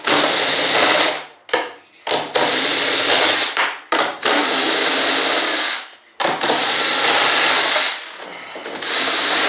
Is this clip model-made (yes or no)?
no